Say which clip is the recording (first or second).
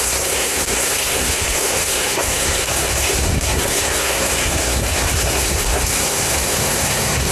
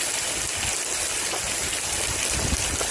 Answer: second